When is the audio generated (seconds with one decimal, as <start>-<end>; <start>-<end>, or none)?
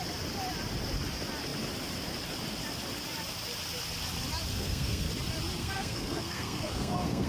4.5-5.1; 5.6-7.3